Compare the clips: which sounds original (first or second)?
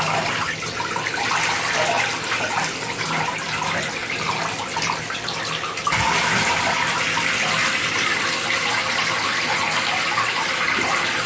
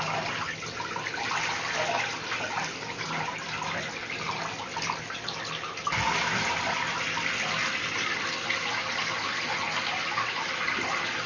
second